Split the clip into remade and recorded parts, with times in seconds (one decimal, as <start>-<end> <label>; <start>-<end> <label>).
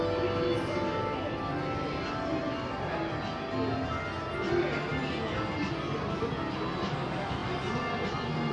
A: 0.0-8.5 recorded